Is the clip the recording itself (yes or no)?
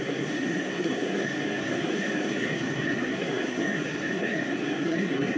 no